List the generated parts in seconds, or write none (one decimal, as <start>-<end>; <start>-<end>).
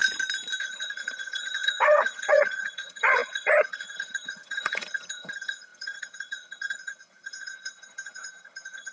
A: 0.6-8.9